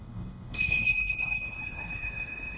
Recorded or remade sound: remade